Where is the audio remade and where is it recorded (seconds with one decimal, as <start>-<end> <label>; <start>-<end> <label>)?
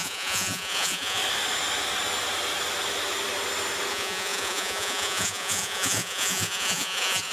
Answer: 0.0-1.2 remade; 1.2-3.9 recorded; 3.9-7.3 remade